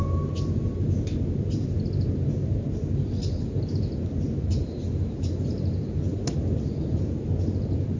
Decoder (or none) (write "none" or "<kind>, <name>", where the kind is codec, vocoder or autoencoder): none